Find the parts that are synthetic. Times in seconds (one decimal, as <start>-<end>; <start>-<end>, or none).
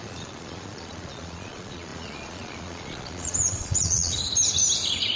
0.0-4.2